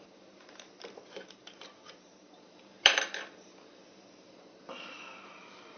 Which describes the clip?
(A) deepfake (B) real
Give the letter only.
A